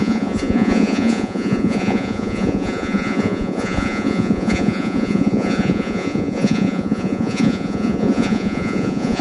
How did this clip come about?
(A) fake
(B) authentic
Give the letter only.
A